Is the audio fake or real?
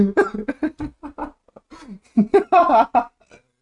real